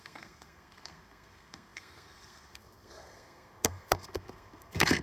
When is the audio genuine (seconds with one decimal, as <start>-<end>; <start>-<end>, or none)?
none